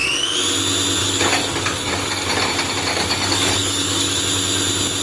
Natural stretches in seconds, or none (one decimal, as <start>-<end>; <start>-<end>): 0.0-1.0; 2.4-2.9; 4.2-5.0